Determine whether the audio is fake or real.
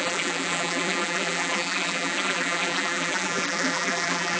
fake